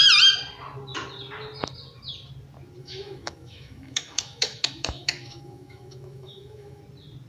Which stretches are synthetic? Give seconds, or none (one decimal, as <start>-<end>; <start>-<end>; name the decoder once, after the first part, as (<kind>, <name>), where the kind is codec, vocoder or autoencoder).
2.8-6.8 (autoencoder, DAC-VAE)